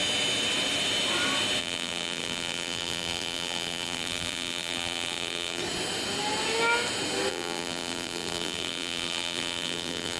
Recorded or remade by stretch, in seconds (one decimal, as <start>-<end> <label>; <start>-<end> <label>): 0.0-1.6 recorded; 1.6-5.6 remade; 5.6-7.3 recorded; 7.3-10.2 remade